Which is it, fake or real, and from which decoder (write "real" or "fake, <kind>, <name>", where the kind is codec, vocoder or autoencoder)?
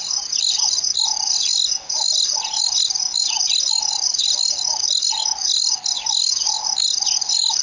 real